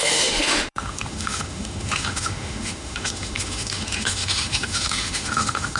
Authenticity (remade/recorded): remade